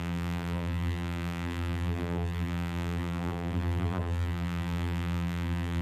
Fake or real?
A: fake